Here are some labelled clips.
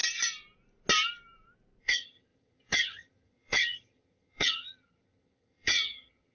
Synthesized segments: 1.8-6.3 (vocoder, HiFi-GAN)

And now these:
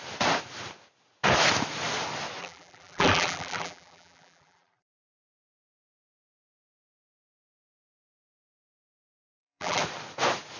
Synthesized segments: 2.4-7.6 (vocoder, BigVGAN v2); 8.1-9.8